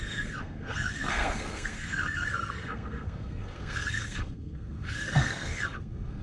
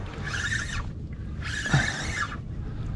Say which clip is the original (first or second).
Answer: second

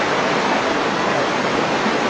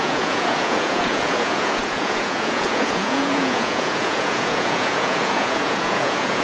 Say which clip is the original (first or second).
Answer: first